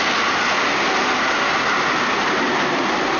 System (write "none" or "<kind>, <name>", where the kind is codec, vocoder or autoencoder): none